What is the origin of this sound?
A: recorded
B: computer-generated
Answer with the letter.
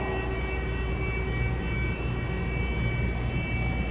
A